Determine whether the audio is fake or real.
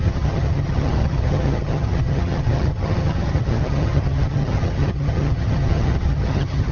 fake